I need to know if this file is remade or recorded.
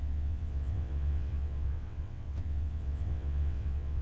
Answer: remade